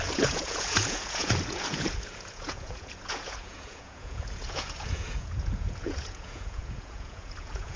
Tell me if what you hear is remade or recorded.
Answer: remade